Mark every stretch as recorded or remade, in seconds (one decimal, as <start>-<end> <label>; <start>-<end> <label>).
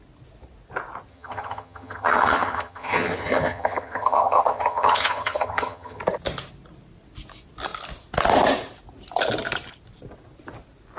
0.0-1.1 recorded; 1.1-6.0 remade; 6.0-11.0 recorded